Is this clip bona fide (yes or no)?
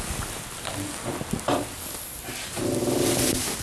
yes